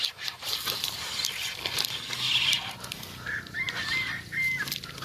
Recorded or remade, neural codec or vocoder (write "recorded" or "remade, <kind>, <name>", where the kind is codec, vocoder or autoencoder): recorded